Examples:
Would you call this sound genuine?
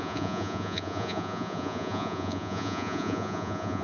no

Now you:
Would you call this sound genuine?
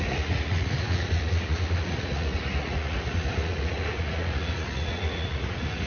no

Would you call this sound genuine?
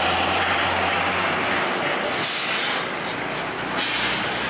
yes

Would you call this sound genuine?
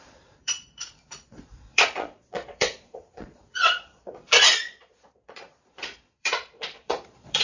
no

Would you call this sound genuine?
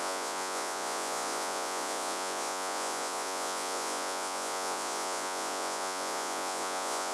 no